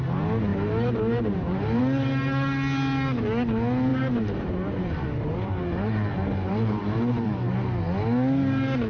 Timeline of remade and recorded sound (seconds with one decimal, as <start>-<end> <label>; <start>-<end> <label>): 0.0-0.5 recorded; 0.5-1.8 remade; 1.8-3.9 recorded; 3.9-7.8 remade; 7.8-8.9 recorded